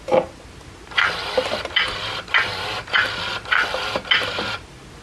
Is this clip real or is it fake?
real